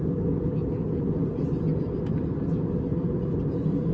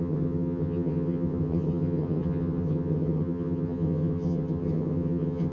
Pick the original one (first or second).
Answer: first